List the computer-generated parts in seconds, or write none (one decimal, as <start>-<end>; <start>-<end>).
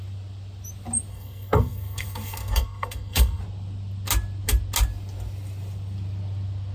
1.1-3.4